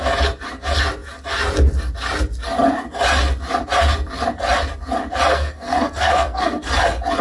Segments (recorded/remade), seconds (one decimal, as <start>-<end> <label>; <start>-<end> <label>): 0.0-5.3 recorded; 5.3-6.7 remade; 6.7-7.2 recorded